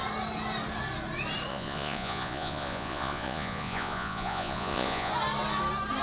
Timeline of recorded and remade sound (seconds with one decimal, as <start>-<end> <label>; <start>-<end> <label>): 0.0-1.5 recorded; 1.5-5.1 remade; 5.1-6.0 recorded